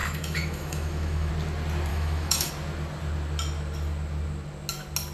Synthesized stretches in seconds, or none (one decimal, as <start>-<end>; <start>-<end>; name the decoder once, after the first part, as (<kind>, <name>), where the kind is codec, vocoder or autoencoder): 0.0-1.3 (autoencoder, DAC-VAE); 1.9-2.5

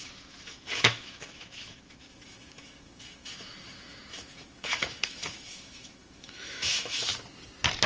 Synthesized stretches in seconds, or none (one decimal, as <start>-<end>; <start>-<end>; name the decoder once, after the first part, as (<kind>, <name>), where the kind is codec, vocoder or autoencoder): 0.0-7.1 (autoencoder, DAC-VAE)

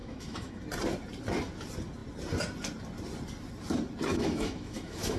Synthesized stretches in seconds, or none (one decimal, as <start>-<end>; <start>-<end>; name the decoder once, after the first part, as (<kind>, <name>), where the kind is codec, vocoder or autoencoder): 0.0-0.6 (autoencoder, DAC-VAE); 4.1-5.2

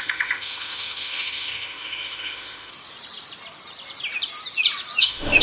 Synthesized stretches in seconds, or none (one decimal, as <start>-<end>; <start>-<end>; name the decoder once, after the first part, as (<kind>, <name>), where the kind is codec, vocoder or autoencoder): 0.0-2.7 (autoencoder, DAC-VAE); 5.0-5.4

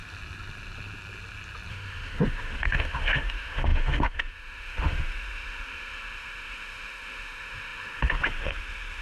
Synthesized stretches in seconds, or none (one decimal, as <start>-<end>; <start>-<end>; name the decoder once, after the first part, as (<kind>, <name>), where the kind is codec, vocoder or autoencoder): 1.7-9.0 (autoencoder, DAC-VAE)

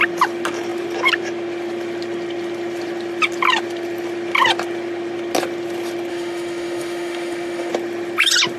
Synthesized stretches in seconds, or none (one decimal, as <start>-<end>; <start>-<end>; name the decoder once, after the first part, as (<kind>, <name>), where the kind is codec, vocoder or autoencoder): 6.1-7.7 (autoencoder, DAC-VAE)